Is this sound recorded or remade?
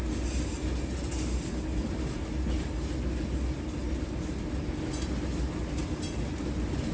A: recorded